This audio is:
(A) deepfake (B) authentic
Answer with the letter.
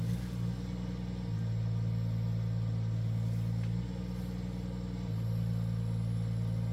B